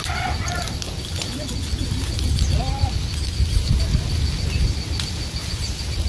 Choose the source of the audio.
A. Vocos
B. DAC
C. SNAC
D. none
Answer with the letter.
D